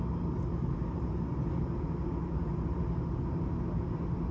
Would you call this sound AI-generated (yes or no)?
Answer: no